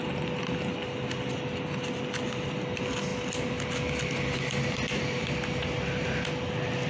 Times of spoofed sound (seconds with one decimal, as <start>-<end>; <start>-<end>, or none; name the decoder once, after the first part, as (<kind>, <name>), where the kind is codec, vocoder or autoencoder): none